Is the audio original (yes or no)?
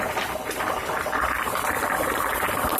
yes